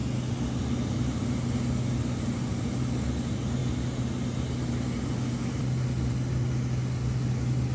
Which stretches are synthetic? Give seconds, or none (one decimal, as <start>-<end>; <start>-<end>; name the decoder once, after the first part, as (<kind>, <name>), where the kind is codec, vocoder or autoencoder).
none